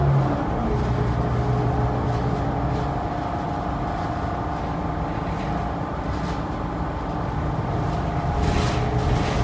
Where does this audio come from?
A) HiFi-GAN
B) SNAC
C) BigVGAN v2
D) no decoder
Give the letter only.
D